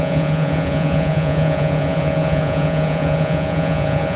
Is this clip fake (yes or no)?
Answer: yes